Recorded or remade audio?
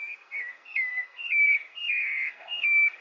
remade